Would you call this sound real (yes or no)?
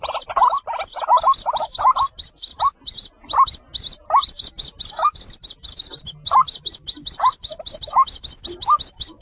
yes